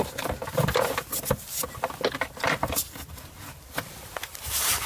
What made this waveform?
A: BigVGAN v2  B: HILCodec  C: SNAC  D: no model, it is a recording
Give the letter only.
A